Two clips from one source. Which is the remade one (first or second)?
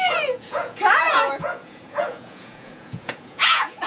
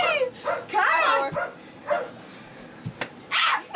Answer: first